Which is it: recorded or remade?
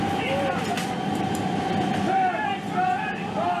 recorded